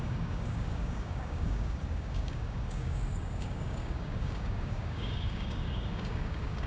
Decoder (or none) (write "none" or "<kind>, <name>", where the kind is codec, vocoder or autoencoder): codec, DAC